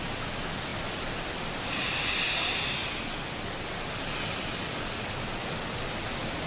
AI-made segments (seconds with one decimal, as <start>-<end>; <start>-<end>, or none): none